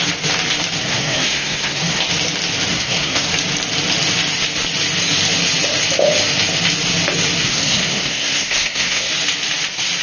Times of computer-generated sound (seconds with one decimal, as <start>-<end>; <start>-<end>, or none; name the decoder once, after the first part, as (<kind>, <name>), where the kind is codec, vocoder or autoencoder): 0.8-2.0 (codec, SNAC); 2.7-3.3; 7.4-9.1